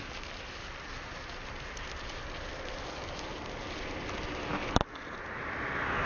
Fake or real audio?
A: real